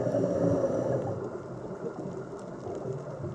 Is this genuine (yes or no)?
yes